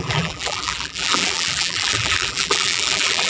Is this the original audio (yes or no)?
no